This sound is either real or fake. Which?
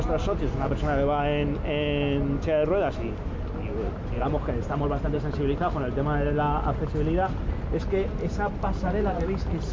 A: real